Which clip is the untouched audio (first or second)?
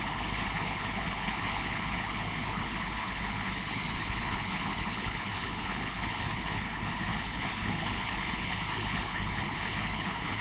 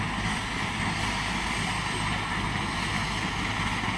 second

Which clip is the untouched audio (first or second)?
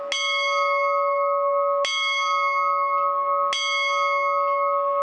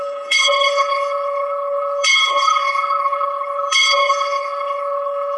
first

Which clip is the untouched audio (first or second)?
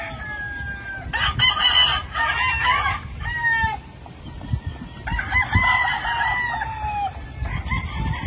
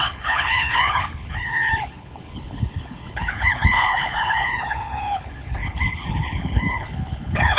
first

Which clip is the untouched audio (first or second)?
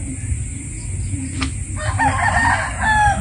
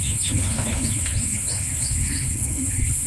first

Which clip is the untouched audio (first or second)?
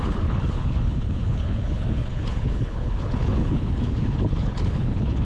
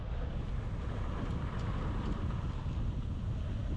second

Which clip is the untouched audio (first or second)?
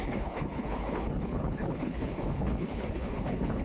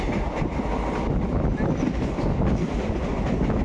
second